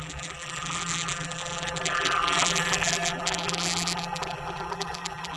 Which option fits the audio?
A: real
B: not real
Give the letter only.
B